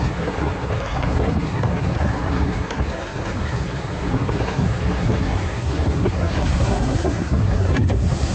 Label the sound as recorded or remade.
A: remade